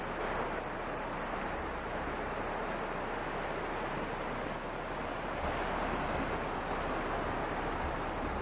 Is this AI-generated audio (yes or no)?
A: no